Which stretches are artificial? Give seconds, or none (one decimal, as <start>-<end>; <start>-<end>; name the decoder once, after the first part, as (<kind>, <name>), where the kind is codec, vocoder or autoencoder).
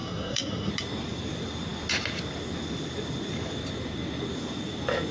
0.0-0.7 (codec, SNAC)